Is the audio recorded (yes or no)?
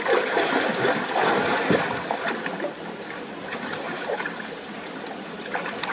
yes